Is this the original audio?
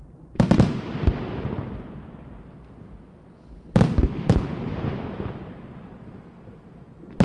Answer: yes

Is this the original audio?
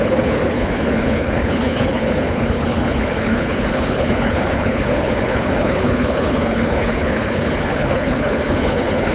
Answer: no